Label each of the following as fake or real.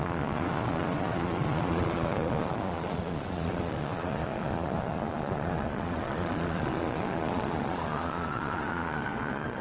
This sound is fake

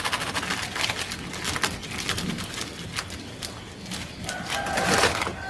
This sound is real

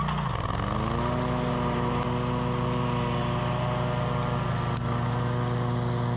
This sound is real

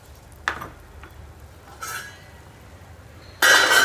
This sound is real